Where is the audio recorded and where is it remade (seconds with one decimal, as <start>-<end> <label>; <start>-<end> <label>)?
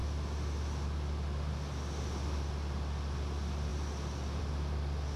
0.0-5.2 recorded